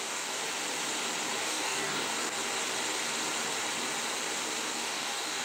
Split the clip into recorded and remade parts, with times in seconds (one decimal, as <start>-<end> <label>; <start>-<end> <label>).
0.0-0.4 remade; 0.4-1.4 recorded; 1.4-2.1 remade; 2.1-4.7 recorded; 4.7-5.4 remade